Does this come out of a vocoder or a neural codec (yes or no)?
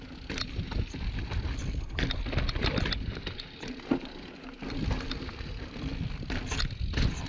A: no